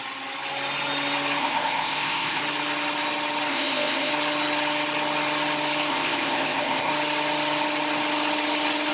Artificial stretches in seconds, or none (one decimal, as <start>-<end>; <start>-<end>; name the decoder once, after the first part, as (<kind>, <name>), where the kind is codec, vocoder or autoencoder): 1.4-2.4 (codec, ZipCodec); 3.5-4.1; 5.9-6.9